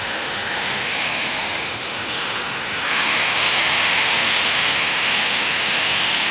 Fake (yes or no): yes